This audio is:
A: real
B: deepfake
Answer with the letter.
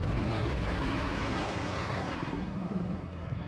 B